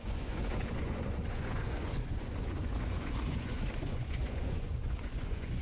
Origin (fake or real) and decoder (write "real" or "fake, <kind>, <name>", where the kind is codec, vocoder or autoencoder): fake, vocoder, Vocos